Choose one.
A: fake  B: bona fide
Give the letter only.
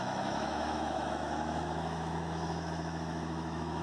A